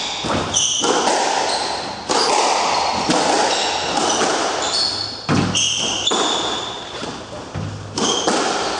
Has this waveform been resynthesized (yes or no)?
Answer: no